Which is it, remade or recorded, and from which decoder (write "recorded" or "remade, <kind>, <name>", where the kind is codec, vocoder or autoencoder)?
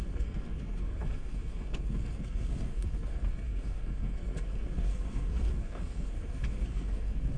remade, codec, SNAC